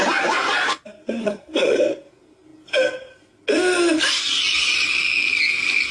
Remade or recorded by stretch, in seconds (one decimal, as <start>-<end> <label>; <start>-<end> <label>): 0.0-1.2 recorded; 1.2-1.8 remade; 1.8-5.9 recorded